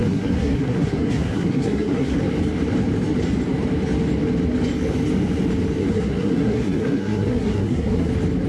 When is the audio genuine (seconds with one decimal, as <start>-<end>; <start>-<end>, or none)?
2.2-5.8; 8.1-8.5